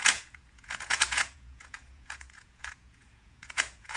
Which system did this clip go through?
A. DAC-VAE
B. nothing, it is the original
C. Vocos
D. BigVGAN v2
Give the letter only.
C